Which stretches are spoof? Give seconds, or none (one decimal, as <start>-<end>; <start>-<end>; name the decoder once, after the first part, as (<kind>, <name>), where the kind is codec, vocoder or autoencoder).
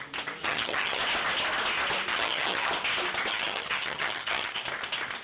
0.4-1.0 (vocoder, HiFi-GAN); 2.1-2.7; 3.3-4.6